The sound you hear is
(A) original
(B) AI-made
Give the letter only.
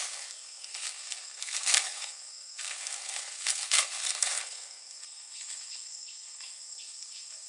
B